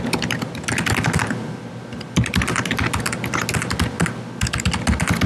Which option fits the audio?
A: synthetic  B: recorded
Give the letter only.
B